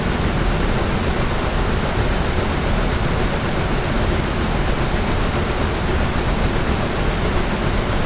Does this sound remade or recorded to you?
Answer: recorded